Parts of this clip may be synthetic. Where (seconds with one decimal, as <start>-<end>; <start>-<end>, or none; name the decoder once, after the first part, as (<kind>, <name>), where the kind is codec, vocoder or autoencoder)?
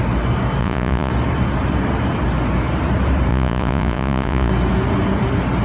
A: 0.6-1.1 (vocoder, Vocos); 3.3-4.5